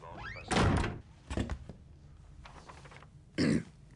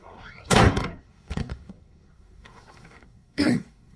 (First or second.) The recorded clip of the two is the first